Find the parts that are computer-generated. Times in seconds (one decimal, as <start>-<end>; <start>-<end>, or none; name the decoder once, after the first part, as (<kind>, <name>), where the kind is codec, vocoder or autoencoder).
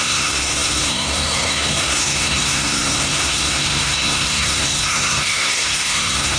0.0-6.4 (codec, SNAC)